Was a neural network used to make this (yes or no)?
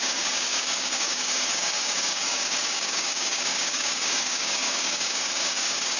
yes